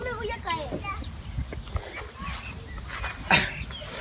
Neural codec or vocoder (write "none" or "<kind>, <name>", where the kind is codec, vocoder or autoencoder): none